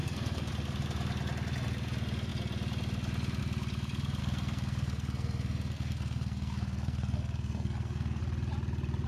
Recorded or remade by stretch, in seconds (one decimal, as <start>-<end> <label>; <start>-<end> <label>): 0.0-0.5 remade; 0.5-4.2 recorded; 4.2-8.2 remade; 8.2-9.1 recorded

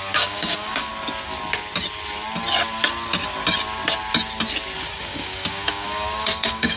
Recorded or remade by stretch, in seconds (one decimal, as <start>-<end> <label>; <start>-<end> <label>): 0.0-0.9 remade; 0.9-5.0 recorded; 5.0-6.8 remade

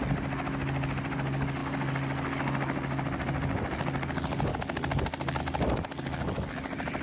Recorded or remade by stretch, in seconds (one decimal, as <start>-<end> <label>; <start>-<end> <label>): 0.0-7.0 recorded

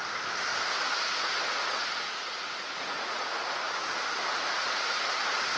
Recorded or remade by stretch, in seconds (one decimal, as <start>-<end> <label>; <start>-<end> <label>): 0.0-0.5 recorded; 0.5-3.9 remade; 3.9-4.3 recorded; 4.3-5.6 remade